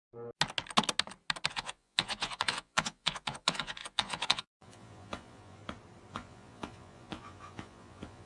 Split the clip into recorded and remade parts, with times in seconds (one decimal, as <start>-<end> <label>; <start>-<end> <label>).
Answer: 0.0-1.5 recorded; 1.5-5.6 remade; 5.6-6.1 recorded; 6.1-8.3 remade